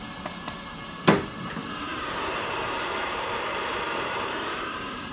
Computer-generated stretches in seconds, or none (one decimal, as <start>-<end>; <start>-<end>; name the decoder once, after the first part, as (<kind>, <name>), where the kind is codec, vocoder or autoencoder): 1.9-5.1 (vocoder, BigVGAN v2)